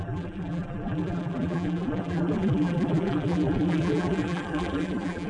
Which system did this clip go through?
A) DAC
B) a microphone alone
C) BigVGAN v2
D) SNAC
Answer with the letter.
C